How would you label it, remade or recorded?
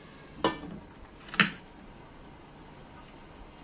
recorded